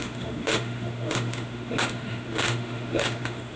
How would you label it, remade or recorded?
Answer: remade